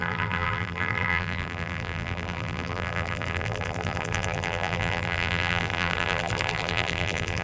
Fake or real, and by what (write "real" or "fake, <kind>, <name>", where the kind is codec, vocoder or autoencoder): fake, vocoder, BigVGAN v2